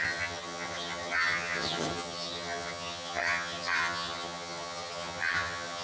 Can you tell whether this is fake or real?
fake